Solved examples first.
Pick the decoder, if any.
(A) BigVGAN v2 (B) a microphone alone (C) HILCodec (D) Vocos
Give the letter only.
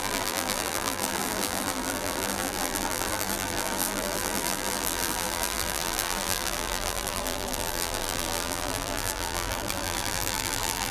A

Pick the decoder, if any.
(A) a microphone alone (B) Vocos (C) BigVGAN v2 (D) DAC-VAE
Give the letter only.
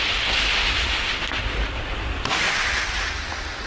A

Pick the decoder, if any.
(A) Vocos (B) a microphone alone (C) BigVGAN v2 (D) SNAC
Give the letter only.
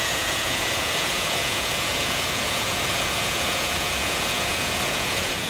A